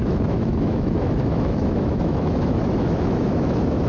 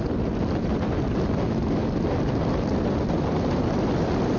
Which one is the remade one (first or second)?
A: first